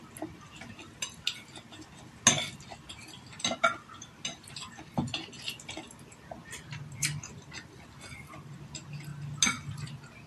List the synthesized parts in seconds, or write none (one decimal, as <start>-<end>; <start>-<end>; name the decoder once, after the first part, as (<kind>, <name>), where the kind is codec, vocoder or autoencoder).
none